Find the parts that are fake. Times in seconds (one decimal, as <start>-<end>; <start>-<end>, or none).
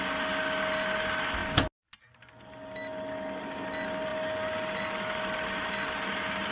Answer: none